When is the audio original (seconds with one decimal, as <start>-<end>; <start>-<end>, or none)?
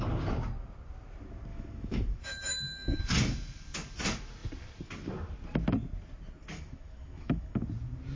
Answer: 0.0-1.5; 3.0-6.5; 7.6-8.2